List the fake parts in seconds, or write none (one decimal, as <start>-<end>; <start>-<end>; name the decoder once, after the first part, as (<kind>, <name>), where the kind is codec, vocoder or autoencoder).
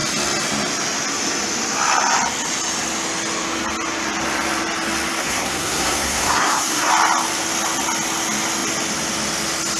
5.2-6.9 (codec, SNAC)